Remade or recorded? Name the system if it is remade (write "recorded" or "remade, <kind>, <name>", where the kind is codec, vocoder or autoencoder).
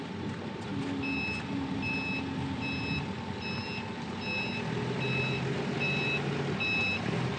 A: recorded